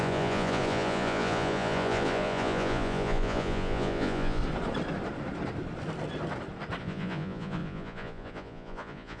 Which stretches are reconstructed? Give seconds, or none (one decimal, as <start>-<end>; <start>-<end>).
0.0-4.4; 6.8-9.2